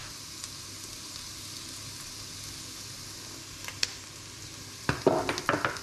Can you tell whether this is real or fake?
real